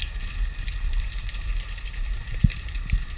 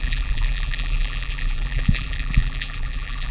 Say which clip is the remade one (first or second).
second